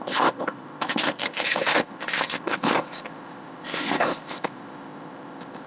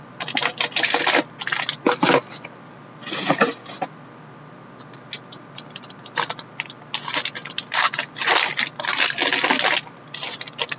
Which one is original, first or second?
second